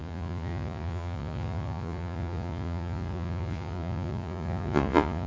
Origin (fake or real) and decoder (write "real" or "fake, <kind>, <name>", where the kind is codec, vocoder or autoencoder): fake, vocoder, Vocos